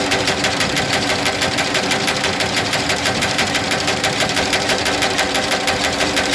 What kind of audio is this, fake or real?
fake